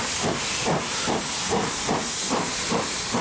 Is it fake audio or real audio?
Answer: real